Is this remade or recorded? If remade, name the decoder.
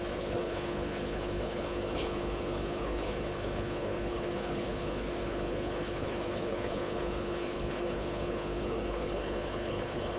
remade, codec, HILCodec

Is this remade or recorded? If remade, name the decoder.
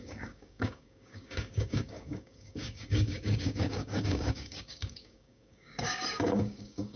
remade, codec, DAC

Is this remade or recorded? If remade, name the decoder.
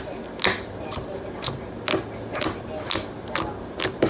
recorded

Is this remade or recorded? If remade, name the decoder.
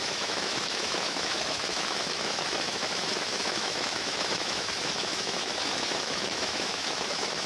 remade, autoencoder, DAC-VAE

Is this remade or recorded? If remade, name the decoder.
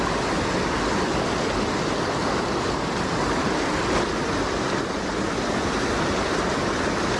recorded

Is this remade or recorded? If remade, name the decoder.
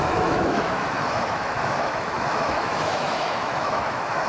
remade, autoencoder, DAC-VAE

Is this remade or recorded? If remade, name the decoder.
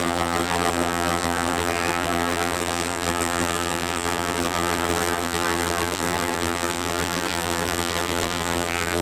remade, vocoder, BigVGAN v2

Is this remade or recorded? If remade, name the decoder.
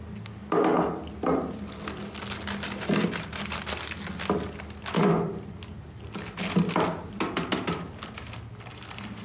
recorded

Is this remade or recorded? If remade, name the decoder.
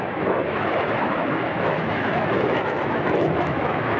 remade, autoencoder, DAC-VAE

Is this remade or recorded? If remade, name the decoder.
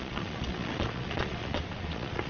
remade, vocoder, Vocos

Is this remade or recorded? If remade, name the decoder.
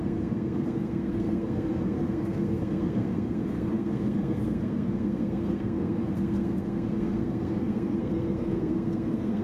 remade, codec, SNAC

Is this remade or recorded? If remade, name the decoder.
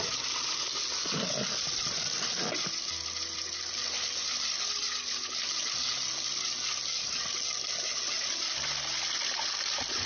recorded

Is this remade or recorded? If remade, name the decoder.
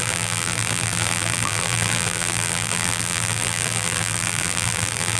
remade, vocoder, BigVGAN v2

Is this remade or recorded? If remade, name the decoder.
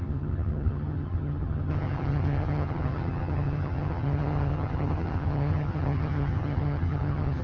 remade, vocoder, HiFi-GAN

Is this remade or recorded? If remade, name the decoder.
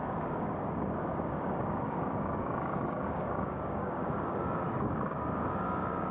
remade, codec, DAC